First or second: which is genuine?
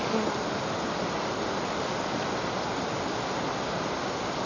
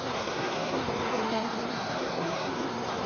first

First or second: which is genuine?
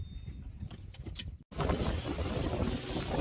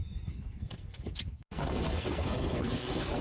first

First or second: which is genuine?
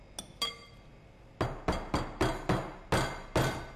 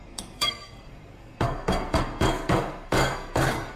first